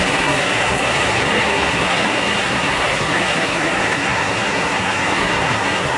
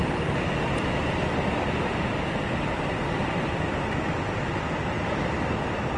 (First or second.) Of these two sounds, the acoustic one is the second